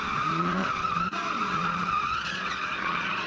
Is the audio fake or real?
fake